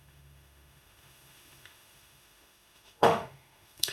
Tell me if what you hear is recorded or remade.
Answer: remade